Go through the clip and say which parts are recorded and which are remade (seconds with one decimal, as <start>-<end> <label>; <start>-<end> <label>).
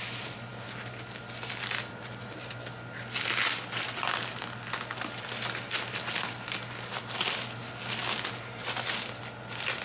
0.0-9.8 recorded